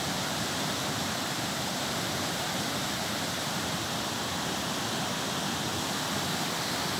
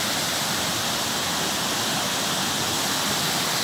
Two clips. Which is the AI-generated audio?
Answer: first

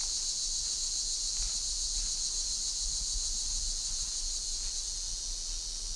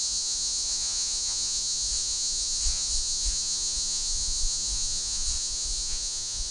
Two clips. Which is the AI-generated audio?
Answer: second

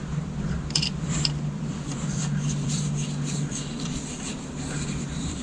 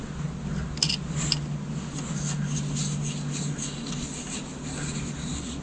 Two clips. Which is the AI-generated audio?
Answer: first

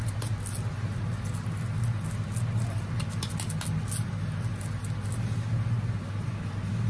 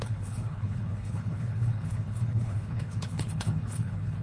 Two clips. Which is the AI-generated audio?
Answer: second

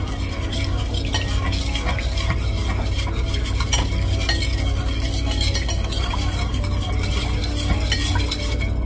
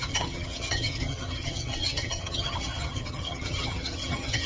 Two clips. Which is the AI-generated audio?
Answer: second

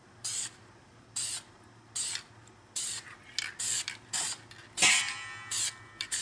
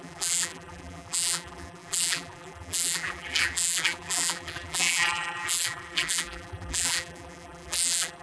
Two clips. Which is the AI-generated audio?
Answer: second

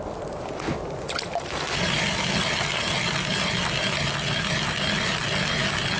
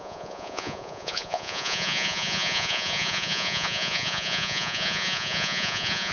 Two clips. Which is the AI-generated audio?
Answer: second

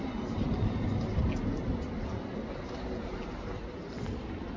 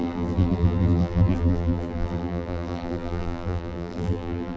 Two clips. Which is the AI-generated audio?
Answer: second